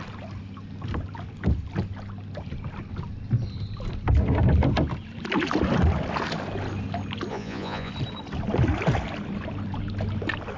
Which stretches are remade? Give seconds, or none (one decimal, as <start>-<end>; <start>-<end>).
7.3-7.9